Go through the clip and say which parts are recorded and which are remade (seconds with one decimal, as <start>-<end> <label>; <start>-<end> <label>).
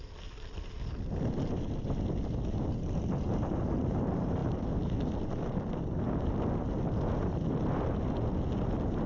0.0-9.1 recorded